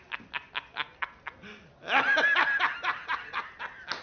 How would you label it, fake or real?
real